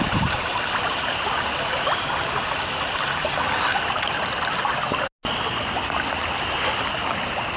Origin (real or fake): real